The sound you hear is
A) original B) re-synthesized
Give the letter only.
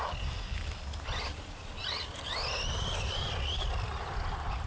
A